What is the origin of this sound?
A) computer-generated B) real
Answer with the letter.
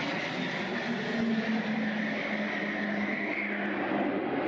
B